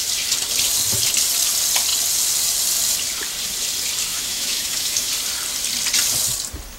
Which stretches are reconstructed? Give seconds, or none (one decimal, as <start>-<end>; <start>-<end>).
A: 4.1-5.1